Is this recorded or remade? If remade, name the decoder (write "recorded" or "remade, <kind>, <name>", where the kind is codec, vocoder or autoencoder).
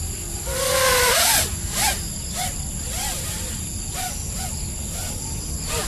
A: recorded